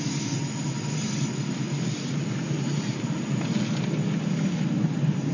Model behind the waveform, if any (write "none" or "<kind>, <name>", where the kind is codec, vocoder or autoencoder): none